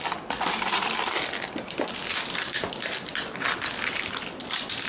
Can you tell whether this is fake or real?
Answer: real